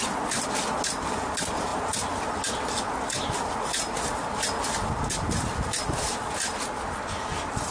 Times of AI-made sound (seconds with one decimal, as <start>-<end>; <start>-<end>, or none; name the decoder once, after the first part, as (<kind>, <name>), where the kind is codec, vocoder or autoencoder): none